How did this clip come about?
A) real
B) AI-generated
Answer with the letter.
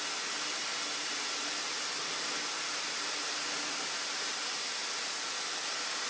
A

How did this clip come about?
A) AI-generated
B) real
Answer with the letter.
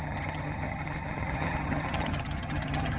A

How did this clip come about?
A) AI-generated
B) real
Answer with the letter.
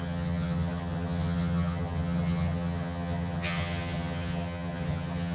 A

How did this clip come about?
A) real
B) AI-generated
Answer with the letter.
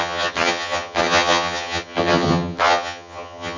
B